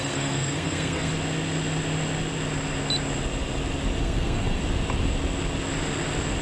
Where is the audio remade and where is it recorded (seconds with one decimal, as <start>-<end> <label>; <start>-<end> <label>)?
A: 0.0-1.1 remade; 1.1-4.0 recorded; 4.0-4.6 remade; 4.6-6.4 recorded